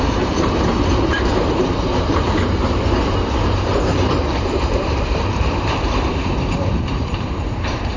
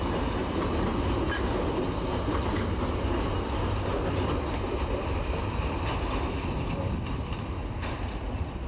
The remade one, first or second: first